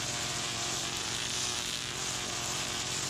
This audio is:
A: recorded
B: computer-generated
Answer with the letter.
B